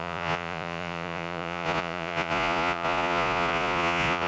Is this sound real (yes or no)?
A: no